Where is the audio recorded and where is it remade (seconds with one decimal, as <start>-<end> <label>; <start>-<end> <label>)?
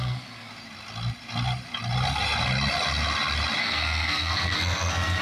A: 0.0-0.5 remade; 0.5-3.6 recorded; 3.6-5.2 remade